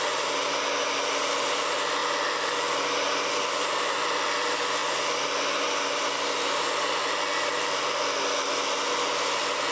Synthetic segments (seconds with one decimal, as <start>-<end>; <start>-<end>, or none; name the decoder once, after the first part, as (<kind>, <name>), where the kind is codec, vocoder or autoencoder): none